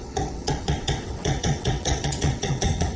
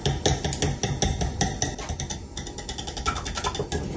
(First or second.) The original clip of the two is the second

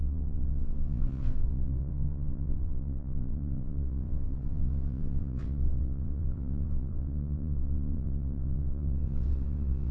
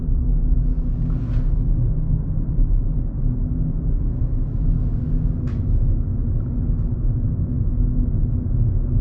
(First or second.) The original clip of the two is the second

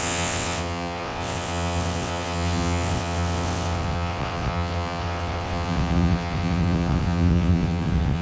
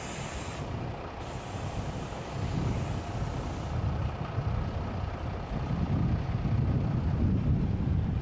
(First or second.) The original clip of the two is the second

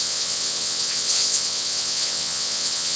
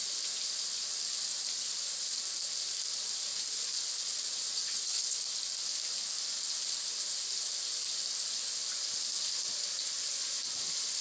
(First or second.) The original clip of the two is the second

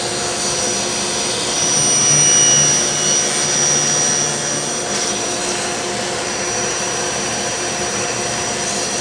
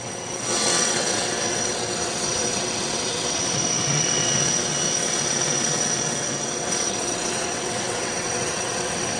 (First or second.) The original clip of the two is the first